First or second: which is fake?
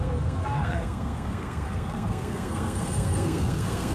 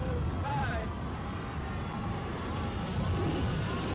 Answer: first